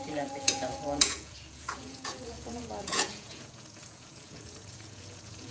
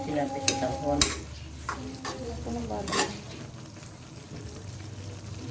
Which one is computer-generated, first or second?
first